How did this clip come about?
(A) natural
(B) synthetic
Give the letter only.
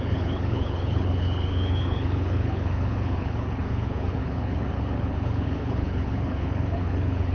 B